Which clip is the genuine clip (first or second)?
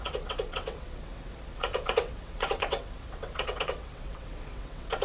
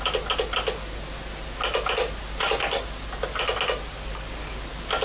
second